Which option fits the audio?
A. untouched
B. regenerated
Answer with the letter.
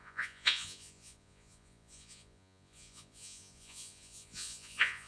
B